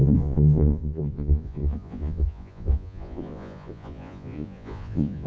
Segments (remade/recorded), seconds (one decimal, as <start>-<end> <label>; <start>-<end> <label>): 0.0-5.3 remade